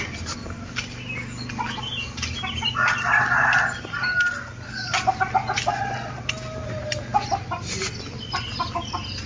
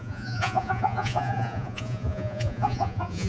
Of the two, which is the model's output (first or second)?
second